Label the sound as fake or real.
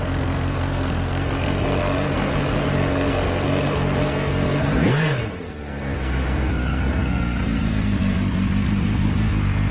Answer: fake